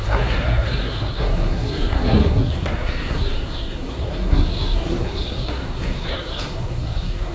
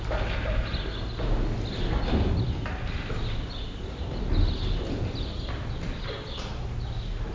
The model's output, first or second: first